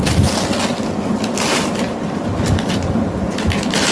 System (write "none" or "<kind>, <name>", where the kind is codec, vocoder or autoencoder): none